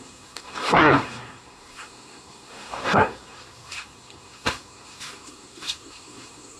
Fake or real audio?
fake